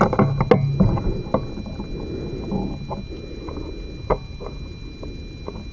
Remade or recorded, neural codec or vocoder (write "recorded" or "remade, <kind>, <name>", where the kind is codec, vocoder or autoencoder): recorded